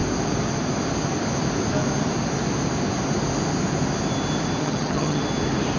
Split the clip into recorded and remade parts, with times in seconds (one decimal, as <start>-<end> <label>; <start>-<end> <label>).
0.0-4.6 recorded; 4.6-5.2 remade; 5.2-5.8 recorded